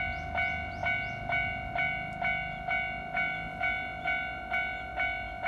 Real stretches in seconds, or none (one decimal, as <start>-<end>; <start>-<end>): 0.0-5.5